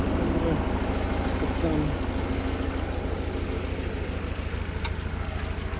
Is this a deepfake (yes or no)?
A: no